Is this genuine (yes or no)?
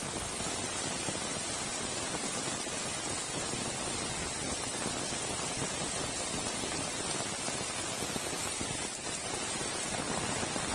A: yes